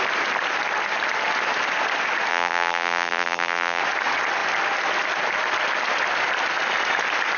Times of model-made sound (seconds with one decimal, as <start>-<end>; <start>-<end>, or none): 2.3-3.8